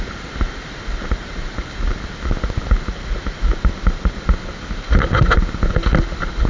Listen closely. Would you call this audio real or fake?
real